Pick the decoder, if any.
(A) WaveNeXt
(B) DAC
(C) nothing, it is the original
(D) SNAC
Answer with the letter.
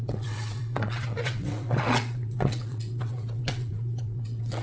A